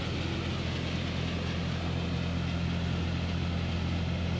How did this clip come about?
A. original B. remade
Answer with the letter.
A